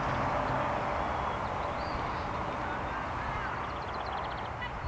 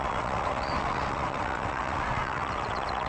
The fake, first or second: second